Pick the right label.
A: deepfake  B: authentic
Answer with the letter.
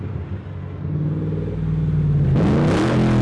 B